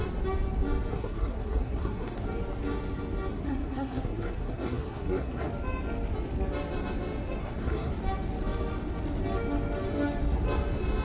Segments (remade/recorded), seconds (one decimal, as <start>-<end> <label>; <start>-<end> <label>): 0.0-0.9 recorded; 0.9-2.2 remade; 2.2-3.3 recorded; 3.3-5.5 remade; 5.5-7.4 recorded; 7.4-7.9 remade; 7.9-11.0 recorded